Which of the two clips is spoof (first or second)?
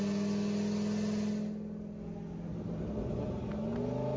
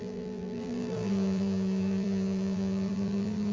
second